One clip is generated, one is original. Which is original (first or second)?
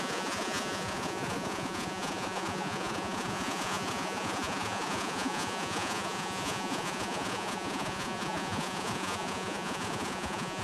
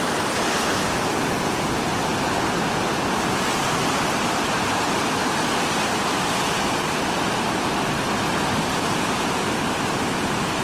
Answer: second